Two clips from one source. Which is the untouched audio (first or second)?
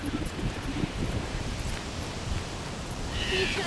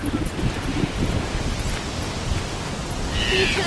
second